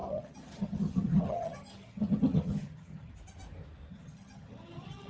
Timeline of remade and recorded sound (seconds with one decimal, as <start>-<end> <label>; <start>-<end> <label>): 0.0-3.1 remade; 3.1-3.9 recorded; 3.9-5.1 remade